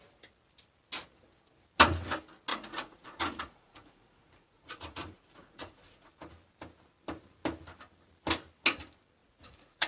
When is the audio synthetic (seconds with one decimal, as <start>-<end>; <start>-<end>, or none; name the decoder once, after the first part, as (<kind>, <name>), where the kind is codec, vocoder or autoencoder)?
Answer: 2.5-6.1 (vocoder, Vocos); 9.2-9.9